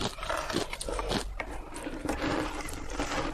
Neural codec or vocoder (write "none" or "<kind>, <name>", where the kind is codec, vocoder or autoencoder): none